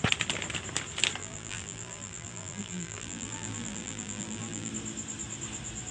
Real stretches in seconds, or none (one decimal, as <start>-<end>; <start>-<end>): 0.0-1.2; 4.7-5.9